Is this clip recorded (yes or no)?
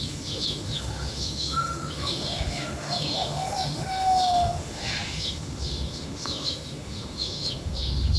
no